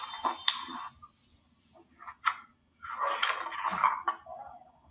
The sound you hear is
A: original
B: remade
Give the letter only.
A